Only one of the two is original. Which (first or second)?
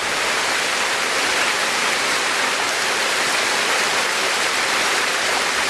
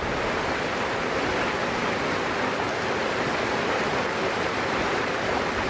second